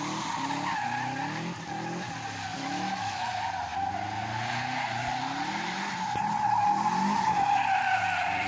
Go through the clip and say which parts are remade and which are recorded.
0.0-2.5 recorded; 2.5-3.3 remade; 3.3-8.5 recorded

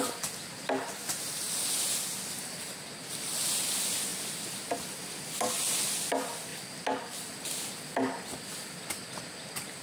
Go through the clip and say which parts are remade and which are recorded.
0.0-9.8 recorded